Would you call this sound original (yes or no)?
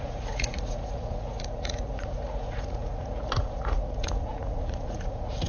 no